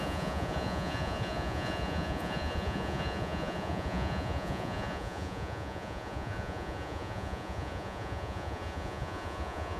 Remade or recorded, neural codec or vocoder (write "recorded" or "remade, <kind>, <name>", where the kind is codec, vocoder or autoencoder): remade, vocoder, Vocos